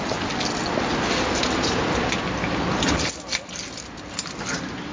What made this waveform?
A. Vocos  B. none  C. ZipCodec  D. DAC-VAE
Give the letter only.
B